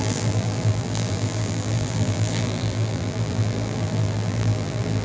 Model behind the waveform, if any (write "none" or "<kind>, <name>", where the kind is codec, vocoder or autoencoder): vocoder, BigVGAN v2